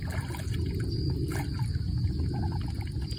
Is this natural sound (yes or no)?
yes